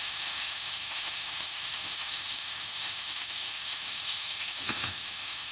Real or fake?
fake